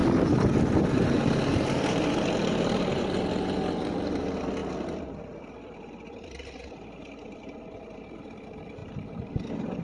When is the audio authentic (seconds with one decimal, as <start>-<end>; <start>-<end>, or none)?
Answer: 3.0-8.8